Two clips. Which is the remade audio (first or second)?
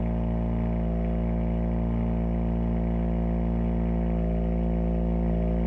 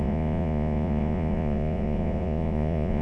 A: second